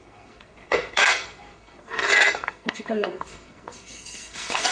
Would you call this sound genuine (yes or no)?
no